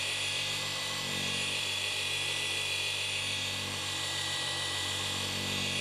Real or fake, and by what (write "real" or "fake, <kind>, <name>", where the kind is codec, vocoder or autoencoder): fake, vocoder, BigVGAN v2